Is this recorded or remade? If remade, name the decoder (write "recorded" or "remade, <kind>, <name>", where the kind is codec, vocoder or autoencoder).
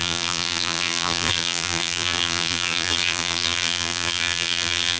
remade, vocoder, BigVGAN v2